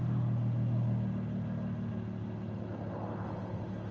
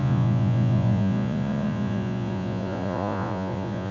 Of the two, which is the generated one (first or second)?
second